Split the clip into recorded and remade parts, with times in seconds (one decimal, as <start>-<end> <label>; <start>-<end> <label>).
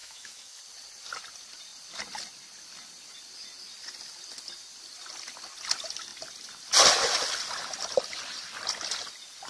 0.0-0.6 remade; 0.6-9.5 recorded